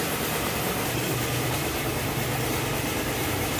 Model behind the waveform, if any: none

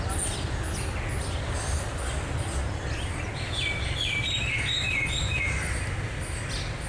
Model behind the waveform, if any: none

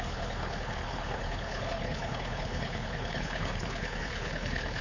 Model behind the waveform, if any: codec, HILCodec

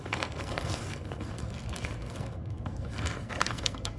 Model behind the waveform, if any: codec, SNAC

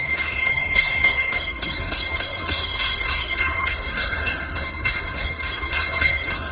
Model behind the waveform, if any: codec, SNAC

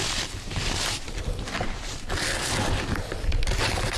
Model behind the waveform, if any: none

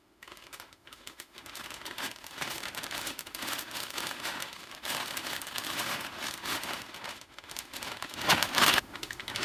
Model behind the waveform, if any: autoencoder, DAC-VAE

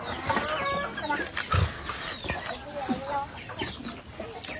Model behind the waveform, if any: none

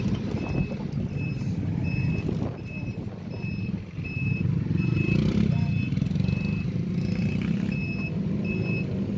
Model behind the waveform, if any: none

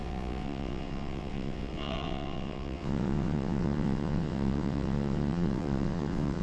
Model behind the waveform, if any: vocoder, WaveNeXt